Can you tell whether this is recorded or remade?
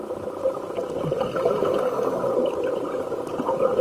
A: recorded